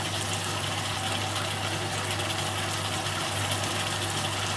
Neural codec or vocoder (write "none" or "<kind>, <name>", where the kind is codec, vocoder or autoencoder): none